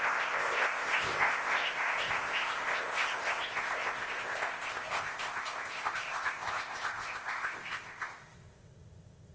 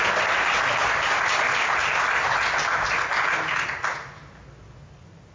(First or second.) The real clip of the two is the second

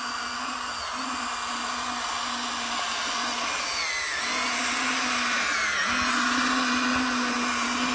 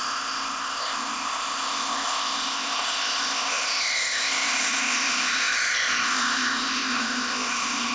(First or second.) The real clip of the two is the first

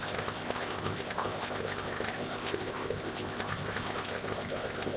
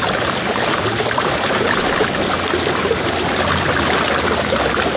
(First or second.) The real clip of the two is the second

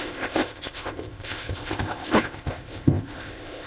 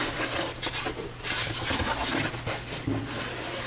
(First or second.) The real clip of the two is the second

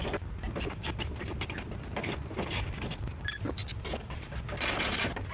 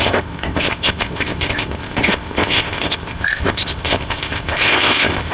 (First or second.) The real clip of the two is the first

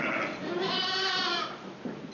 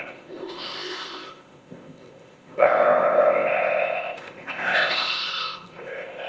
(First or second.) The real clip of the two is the first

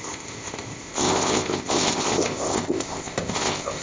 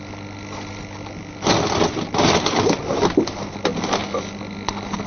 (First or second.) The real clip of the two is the second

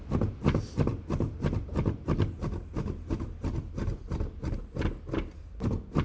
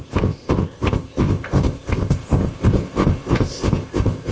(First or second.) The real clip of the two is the first